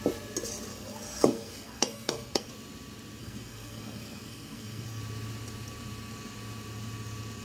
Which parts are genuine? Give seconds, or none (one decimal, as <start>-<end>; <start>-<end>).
0.0-0.7; 2.5-3.2; 5.0-7.4